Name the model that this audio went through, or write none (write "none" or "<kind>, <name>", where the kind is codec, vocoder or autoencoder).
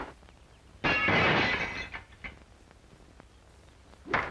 none